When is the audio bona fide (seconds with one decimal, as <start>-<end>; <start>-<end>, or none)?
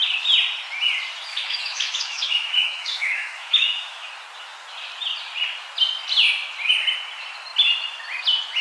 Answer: 0.0-1.3; 4.1-8.6